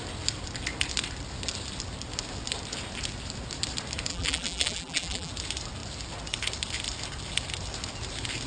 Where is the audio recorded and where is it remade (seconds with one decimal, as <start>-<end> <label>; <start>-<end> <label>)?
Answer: 0.0-4.1 recorded; 4.1-5.3 remade; 5.3-8.5 recorded